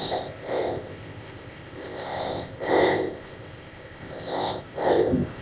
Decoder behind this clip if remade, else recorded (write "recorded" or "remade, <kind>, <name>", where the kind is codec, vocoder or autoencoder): remade, codec, ZipCodec